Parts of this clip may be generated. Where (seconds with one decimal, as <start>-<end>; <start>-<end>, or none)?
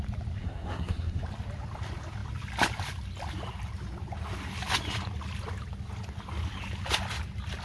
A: 0.4-1.2